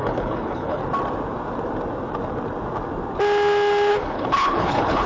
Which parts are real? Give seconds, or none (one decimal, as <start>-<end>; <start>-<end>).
0.8-3.9